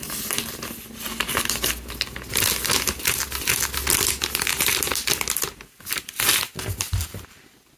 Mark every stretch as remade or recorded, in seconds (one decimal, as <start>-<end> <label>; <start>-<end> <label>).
0.0-7.8 recorded